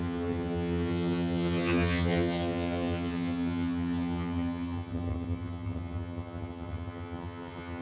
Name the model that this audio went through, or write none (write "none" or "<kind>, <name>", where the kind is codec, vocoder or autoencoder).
vocoder, HiFi-GAN